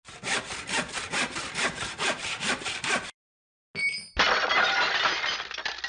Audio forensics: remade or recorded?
recorded